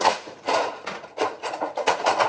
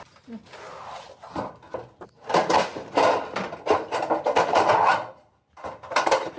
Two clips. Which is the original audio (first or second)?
second